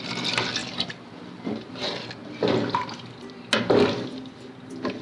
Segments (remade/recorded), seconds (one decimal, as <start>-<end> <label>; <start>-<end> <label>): 0.0-5.0 recorded

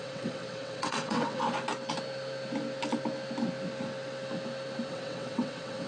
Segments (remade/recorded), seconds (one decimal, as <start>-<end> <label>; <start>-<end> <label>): 0.0-1.4 remade; 1.4-4.9 recorded; 4.9-5.9 remade

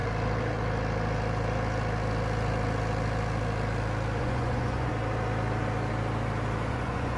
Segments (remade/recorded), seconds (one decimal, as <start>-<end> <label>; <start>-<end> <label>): 0.0-4.2 recorded; 4.2-4.9 remade; 4.9-6.7 recorded; 6.7-7.2 remade

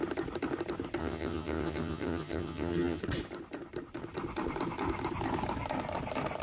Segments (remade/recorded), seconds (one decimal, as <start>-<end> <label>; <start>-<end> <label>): 0.0-1.0 recorded; 1.0-3.0 remade; 3.0-6.4 recorded

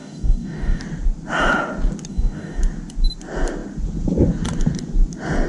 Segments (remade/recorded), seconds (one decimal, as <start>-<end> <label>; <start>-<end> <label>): 0.0-0.8 remade; 0.8-2.1 recorded; 2.1-2.6 remade; 2.6-5.5 recorded

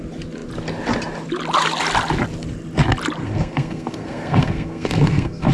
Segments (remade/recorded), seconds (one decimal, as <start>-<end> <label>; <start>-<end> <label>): 0.0-3.2 recorded; 3.2-5.5 remade